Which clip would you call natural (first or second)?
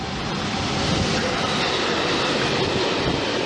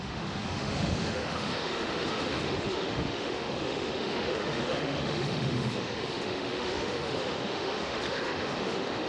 first